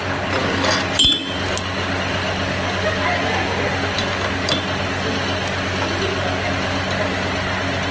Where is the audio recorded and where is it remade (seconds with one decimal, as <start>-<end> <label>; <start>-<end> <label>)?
0.0-7.9 recorded